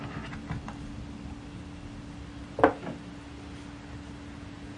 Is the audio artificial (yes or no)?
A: no